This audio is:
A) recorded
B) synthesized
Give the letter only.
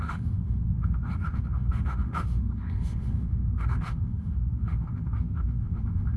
B